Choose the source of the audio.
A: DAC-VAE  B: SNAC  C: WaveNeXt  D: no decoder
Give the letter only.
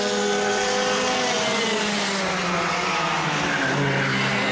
D